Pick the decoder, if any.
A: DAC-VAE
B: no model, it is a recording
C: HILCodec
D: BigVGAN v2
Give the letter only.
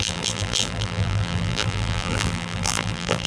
D